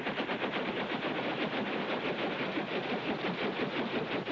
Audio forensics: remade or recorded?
recorded